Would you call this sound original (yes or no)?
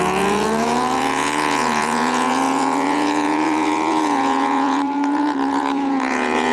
no